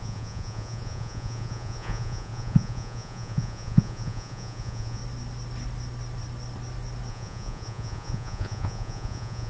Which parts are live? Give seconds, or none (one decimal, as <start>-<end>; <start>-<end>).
5.0-7.1